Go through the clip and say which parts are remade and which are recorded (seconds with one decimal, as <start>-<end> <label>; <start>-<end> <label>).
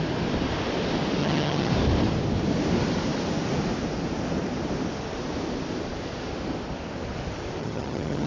0.0-1.2 recorded; 1.2-1.7 remade; 1.7-7.6 recorded; 7.6-8.3 remade